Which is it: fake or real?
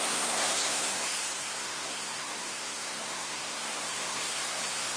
fake